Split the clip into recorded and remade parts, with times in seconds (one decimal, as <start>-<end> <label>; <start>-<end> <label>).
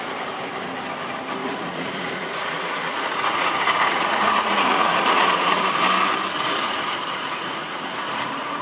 0.0-1.4 recorded; 1.4-5.6 remade; 5.6-6.3 recorded; 6.3-8.6 remade